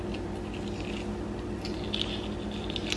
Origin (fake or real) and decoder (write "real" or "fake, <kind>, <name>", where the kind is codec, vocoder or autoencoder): real